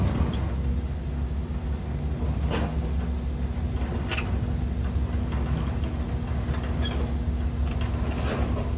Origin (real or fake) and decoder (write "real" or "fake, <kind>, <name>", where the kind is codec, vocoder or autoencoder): real